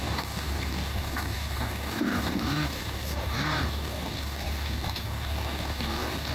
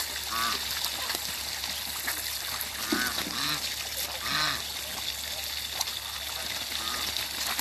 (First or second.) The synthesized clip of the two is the first